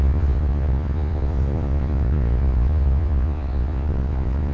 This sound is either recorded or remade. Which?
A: remade